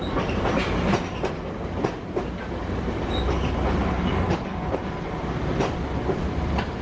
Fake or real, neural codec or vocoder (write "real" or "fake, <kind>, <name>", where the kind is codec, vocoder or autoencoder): real